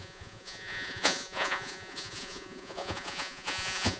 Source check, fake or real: fake